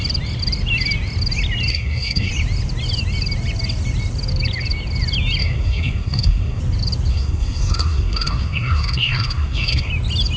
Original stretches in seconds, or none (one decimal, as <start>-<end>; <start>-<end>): 0.0-1.7; 2.3-5.4; 6.6-7.1; 9.9-10.4